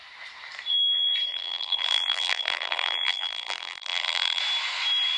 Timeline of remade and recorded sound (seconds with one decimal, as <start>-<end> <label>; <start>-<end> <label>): 0.0-1.3 recorded; 1.3-4.4 remade; 4.4-5.2 recorded